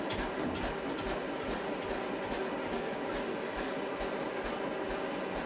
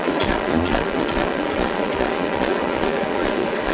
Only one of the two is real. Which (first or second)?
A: first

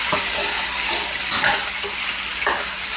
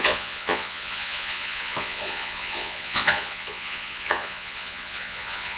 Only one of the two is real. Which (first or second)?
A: first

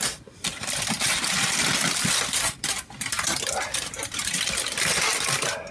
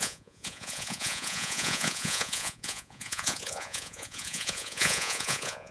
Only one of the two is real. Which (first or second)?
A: first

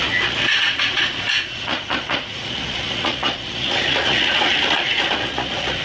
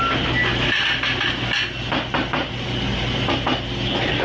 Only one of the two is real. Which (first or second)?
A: second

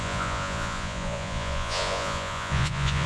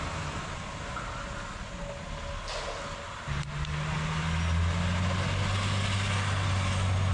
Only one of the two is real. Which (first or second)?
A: second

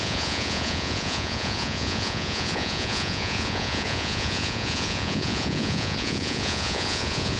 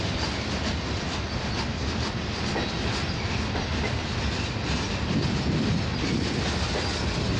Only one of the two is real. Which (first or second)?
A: second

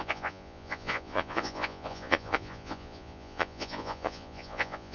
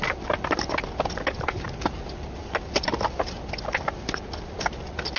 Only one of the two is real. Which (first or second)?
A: second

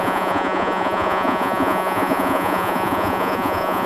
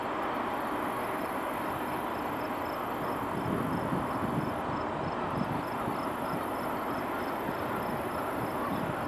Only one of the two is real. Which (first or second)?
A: second